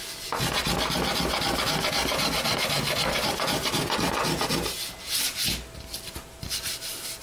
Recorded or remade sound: recorded